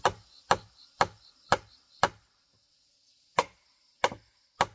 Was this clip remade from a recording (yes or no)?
no